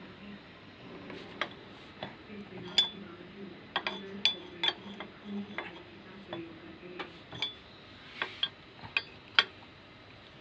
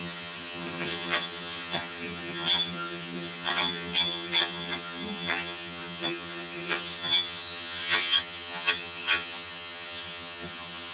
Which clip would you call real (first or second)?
first